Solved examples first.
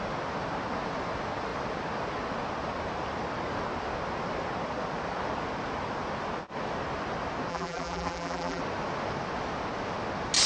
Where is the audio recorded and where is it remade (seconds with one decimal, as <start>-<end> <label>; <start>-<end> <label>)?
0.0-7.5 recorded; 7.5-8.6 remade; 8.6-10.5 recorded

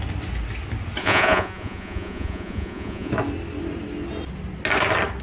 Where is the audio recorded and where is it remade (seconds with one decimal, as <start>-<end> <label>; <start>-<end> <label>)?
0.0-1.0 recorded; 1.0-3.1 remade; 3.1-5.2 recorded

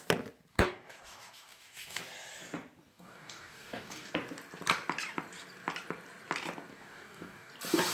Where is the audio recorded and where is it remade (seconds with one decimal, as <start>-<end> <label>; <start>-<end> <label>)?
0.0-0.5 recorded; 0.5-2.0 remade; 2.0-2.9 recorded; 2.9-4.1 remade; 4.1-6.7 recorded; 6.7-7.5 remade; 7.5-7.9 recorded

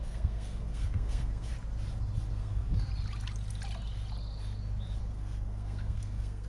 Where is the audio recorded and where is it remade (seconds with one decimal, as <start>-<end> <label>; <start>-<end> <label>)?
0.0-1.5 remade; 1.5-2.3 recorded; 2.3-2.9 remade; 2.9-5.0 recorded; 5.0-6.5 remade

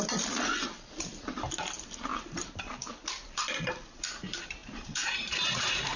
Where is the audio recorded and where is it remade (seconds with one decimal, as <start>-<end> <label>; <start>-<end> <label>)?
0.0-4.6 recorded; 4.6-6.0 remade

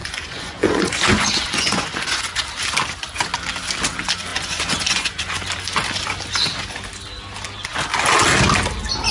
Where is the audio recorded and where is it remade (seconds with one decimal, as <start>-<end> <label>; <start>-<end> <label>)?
0.0-2.4 remade; 2.4-4.3 recorded; 4.3-5.4 remade; 5.4-9.1 recorded